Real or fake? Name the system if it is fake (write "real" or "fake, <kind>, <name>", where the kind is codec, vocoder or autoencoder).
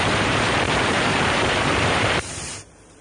fake, vocoder, BigVGAN v2